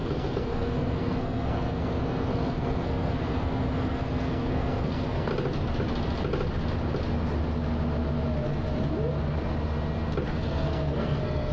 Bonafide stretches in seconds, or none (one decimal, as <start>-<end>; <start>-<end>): 5.3-10.3